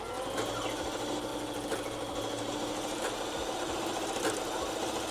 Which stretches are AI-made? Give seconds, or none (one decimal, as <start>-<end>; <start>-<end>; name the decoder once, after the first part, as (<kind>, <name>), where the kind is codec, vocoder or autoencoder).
none